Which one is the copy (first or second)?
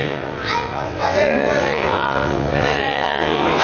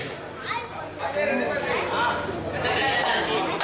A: first